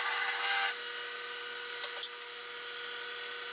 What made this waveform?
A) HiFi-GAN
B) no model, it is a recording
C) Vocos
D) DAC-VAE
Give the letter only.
B